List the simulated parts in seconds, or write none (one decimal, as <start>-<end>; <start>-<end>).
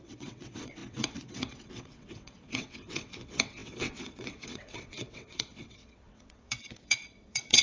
0.0-7.6